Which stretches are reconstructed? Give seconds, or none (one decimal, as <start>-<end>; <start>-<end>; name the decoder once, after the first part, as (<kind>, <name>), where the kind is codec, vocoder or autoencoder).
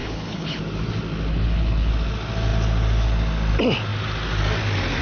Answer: 0.0-0.6 (codec, HILCodec); 1.3-1.9